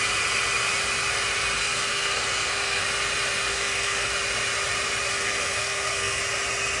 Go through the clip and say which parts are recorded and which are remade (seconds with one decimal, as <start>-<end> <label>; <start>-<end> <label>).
0.0-1.6 recorded; 1.6-2.8 remade; 2.8-3.5 recorded; 3.5-4.1 remade; 4.1-5.1 recorded; 5.1-6.2 remade; 6.2-6.8 recorded